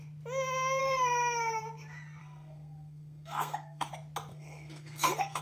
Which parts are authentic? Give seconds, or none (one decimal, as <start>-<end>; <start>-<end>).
0.0-0.8; 1.6-2.2; 3.9-4.3